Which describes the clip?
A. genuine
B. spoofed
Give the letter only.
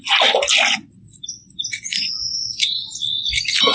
A